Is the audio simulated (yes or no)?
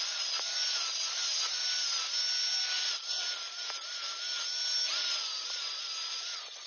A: no